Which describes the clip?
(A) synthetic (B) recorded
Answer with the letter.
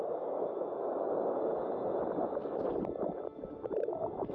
B